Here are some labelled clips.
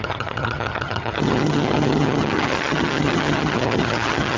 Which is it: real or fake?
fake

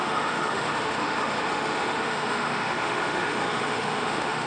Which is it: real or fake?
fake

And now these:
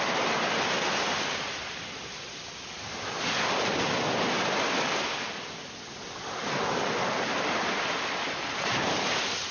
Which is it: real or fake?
real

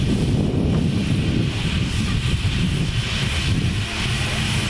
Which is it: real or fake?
real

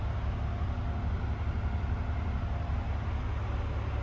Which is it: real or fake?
real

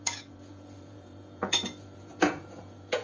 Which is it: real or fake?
fake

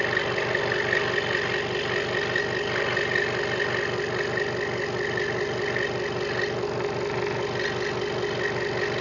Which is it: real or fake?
real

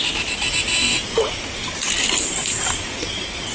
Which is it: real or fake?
real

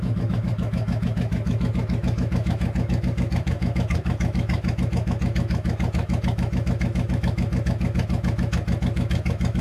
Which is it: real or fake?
fake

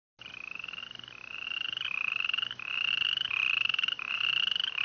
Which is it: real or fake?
real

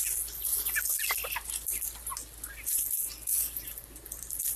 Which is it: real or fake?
real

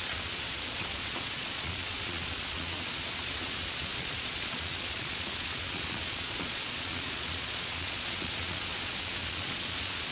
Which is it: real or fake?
fake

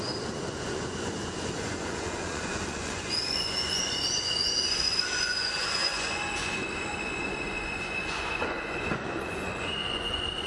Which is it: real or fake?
fake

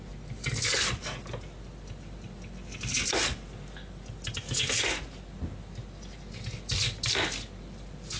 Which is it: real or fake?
real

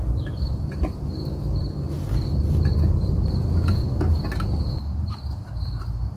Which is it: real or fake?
fake